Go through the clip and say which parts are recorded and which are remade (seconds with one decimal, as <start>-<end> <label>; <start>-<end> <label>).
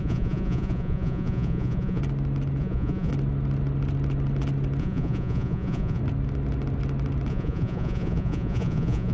0.0-2.0 remade; 2.0-2.6 recorded; 2.6-3.1 remade; 3.1-4.8 recorded; 4.8-6.0 remade; 6.0-7.3 recorded; 7.3-9.1 remade